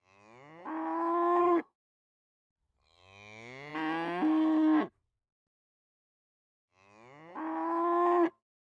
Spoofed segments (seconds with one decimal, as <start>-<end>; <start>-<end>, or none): 1.4-2.1